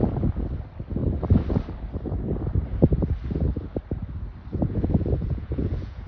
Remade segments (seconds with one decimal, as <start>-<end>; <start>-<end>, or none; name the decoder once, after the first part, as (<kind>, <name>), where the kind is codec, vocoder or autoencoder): 4.6-6.1 (vocoder, Vocos)